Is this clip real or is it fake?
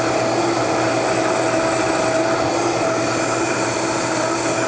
real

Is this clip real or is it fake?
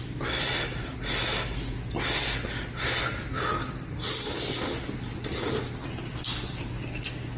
real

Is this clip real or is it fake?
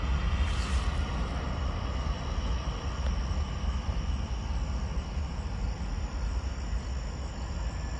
real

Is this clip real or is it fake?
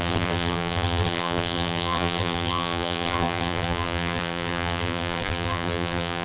fake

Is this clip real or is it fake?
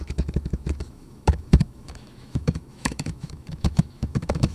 fake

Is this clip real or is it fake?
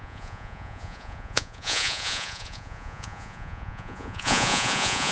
fake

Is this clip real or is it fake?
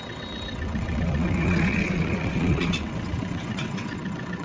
fake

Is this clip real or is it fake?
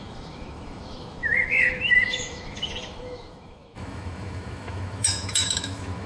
fake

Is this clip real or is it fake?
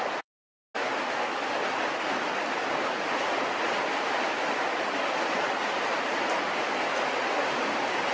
real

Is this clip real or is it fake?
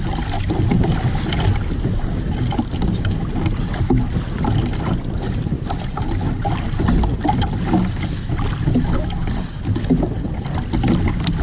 real